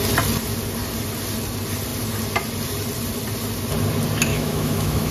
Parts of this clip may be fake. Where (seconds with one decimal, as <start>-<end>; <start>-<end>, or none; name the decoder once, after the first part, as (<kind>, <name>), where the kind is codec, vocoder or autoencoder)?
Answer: 4.3-5.1 (autoencoder, DAC-VAE)